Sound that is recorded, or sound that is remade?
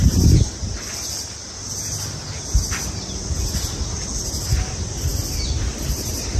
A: recorded